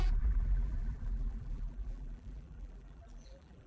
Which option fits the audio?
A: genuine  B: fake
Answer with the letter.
B